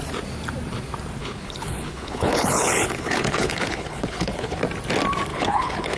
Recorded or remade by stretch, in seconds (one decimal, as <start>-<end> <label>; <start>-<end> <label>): 0.0-1.2 recorded; 1.2-4.6 remade; 4.6-5.3 recorded; 5.3-6.0 remade